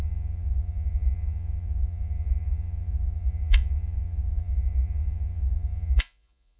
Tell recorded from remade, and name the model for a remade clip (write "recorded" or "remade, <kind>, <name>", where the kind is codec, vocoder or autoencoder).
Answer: remade, vocoder, Vocos